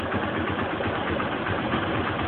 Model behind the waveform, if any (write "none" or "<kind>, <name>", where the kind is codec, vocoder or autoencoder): vocoder, BigVGAN v2